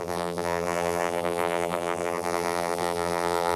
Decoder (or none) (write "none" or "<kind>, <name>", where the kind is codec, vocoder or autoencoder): vocoder, BigVGAN v2